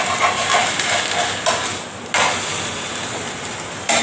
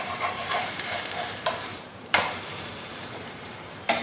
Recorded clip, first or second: first